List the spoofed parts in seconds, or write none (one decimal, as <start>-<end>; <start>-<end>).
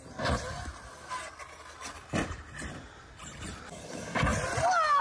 none